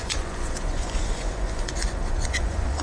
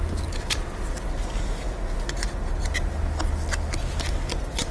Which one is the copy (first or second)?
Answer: first